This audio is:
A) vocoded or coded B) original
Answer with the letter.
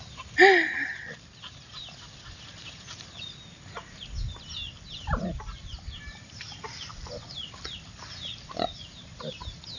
B